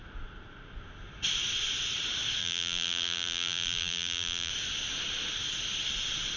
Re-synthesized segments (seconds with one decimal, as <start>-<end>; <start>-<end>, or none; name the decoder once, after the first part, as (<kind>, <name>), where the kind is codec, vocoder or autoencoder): 2.4-4.5 (vocoder, BigVGAN v2)